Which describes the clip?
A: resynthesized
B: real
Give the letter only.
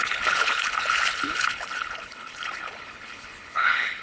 A